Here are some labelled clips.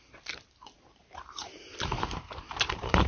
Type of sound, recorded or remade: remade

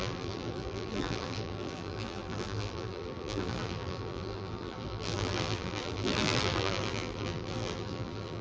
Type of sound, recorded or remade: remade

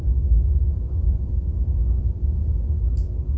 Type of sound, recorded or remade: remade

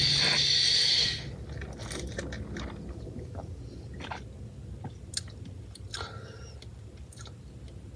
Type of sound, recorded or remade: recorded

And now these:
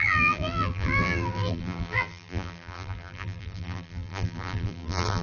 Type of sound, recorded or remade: remade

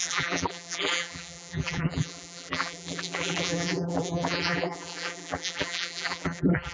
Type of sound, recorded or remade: remade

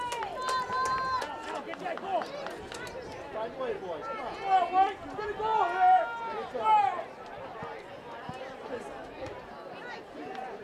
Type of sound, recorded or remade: recorded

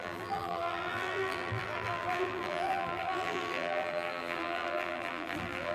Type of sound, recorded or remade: remade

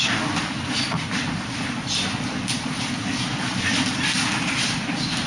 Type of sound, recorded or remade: recorded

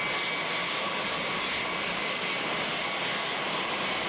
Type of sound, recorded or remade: recorded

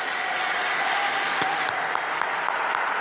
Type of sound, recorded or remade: recorded